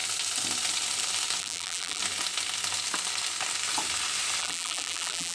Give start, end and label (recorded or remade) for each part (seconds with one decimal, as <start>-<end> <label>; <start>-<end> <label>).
0.0-1.4 recorded; 1.4-2.0 remade; 2.0-4.4 recorded; 4.4-5.3 remade